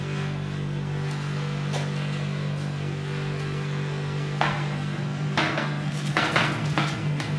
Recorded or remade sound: remade